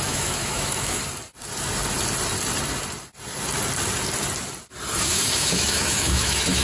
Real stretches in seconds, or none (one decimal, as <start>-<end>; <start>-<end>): 1.0-5.0